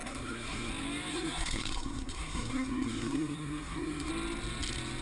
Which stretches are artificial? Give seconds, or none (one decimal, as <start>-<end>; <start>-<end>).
0.0-0.7; 1.1-4.1